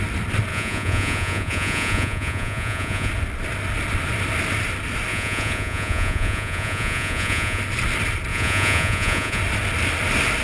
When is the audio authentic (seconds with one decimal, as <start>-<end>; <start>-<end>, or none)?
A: 0.0-0.5; 3.1-5.1; 7.6-8.3; 9.4-10.4